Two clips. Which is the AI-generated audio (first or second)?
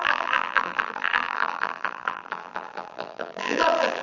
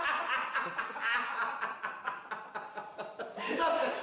first